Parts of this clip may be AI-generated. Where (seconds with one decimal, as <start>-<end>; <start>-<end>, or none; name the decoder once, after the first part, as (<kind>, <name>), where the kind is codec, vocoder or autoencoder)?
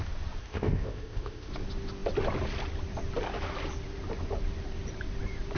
0.4-1.5 (codec, ZipCodec)